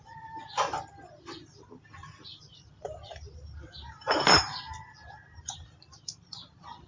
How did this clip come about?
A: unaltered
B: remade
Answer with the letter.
B